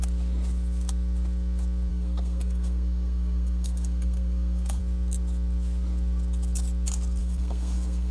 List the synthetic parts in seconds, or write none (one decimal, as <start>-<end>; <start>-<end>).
1.9-4.8; 7.2-8.1